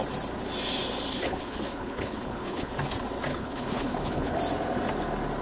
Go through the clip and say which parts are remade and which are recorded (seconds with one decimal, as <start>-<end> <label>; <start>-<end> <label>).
0.0-1.1 recorded; 1.1-2.7 remade; 2.7-3.3 recorded; 3.3-4.4 remade; 4.4-5.4 recorded